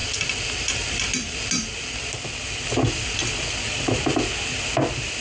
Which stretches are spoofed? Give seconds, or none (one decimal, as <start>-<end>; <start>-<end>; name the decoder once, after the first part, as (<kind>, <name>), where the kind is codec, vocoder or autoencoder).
none